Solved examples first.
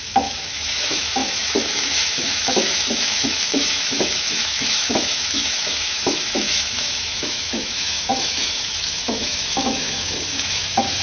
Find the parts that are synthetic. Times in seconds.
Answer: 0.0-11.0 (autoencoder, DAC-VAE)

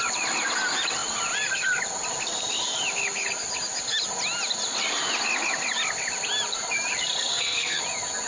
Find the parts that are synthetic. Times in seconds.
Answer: 7.3-7.8 (codec, SNAC)

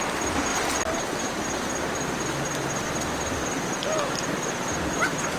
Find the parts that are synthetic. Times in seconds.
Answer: none

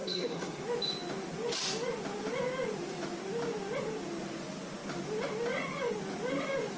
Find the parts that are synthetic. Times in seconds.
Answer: 0.0-0.6 (codec, SNAC)

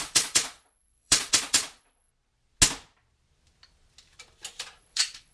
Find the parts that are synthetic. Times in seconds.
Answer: 0.0-2.1 (vocoder, Vocos); 4.6-5.3

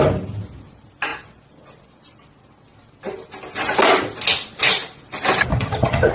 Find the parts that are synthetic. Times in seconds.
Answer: 5.5-6.1 (vocoder, HiFi-GAN)

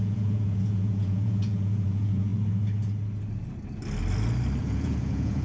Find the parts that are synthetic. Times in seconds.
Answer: 0.0-2.3 (vocoder, Vocos); 4.6-5.4